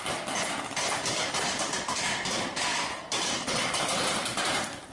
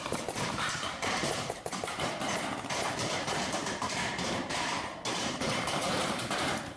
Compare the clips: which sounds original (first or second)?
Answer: first